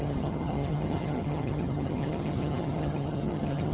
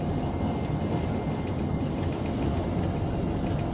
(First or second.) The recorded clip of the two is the second